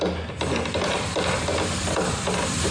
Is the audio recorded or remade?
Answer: recorded